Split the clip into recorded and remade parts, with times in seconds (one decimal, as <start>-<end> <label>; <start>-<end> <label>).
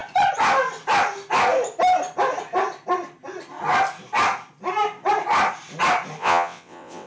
0.0-6.2 recorded; 6.2-7.1 remade